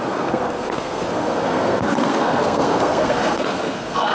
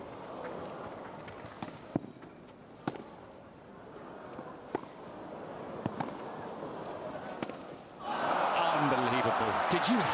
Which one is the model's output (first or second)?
first